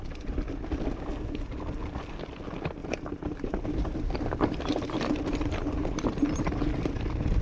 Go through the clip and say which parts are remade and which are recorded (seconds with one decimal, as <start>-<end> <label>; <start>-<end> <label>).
0.0-2.8 recorded; 2.8-7.4 remade